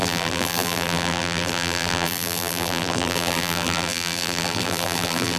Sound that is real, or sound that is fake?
fake